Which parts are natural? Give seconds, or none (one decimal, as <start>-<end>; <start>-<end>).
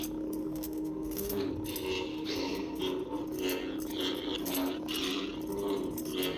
0.0-0.4; 1.5-2.1; 2.8-6.4